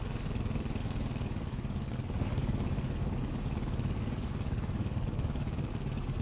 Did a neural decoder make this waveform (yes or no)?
yes